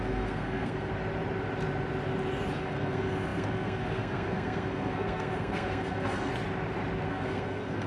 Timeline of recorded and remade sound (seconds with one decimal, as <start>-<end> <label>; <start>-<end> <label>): 0.0-0.9 remade; 0.9-2.5 recorded; 2.5-6.3 remade; 6.3-7.1 recorded; 7.1-7.9 remade